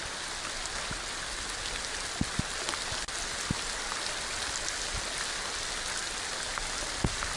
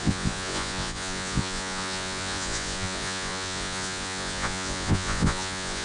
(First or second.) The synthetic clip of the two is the second